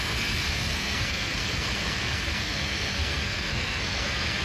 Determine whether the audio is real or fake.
fake